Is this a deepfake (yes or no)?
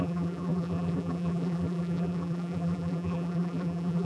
yes